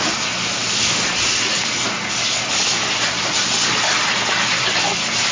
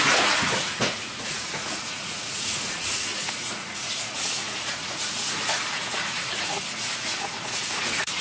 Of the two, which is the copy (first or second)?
second